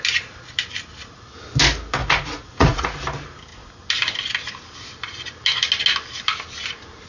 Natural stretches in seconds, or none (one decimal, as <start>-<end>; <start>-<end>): 0.0-2.0; 3.0-7.1